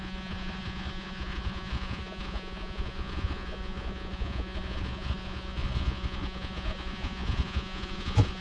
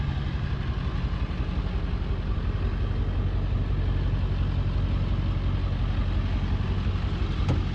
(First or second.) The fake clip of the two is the first